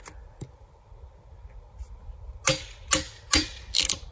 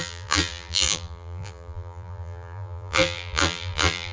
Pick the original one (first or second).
first